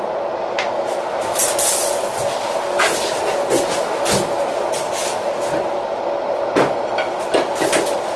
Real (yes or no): yes